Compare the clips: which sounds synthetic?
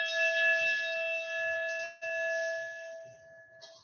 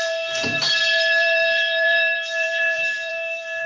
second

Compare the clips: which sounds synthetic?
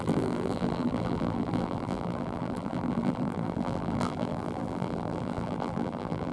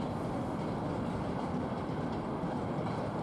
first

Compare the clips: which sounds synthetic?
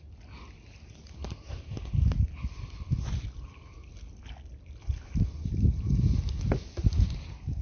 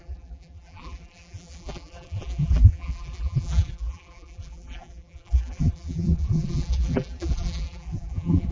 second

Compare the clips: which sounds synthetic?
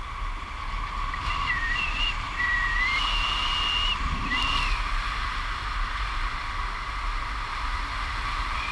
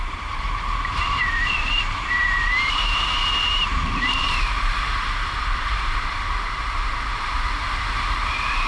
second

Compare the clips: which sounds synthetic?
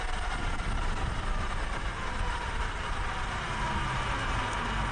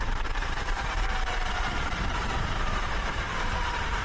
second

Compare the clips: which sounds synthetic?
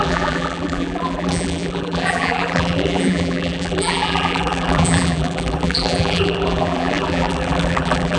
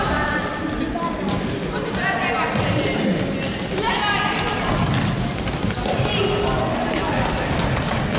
first